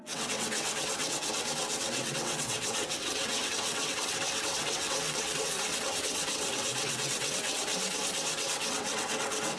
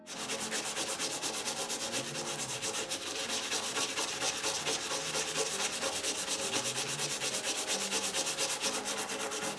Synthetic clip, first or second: first